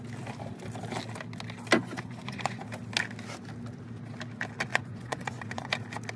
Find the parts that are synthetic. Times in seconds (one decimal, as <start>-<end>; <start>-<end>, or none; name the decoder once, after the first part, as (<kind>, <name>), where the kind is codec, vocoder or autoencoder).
1.8-2.6 (vocoder, Vocos); 4.7-5.7